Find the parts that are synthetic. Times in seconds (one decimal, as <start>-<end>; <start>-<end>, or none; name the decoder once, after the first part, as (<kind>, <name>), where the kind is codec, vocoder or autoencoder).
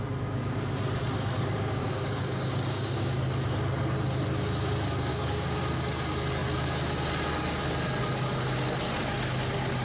1.8-3.2 (codec, DAC); 5.1-5.6